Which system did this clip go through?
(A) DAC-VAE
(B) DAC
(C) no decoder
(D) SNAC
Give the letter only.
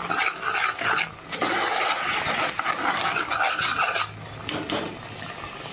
C